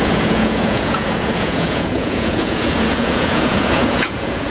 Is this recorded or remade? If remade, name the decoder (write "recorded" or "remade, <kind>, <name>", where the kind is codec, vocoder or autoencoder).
remade, vocoder, Vocos